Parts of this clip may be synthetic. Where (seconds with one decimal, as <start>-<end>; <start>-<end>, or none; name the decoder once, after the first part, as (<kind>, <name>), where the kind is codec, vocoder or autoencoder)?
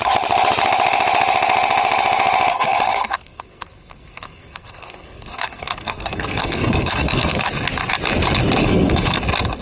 2.5-7.5 (codec, SNAC); 8.6-9.2